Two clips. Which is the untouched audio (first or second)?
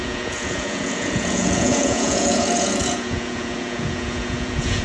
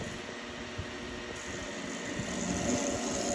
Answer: second